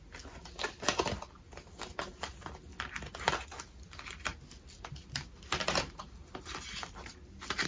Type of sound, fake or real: real